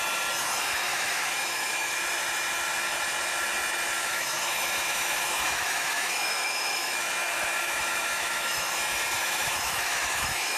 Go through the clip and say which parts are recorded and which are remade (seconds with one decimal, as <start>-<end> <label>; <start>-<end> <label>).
0.0-0.9 recorded; 0.9-2.0 remade; 2.0-4.0 recorded; 4.0-8.7 remade; 8.7-9.2 recorded; 9.2-10.6 remade